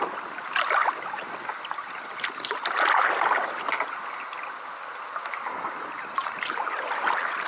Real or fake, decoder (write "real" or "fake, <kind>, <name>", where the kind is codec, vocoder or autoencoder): real